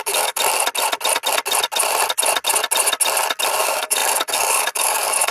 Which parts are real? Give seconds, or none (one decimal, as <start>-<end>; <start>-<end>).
0.4-3.6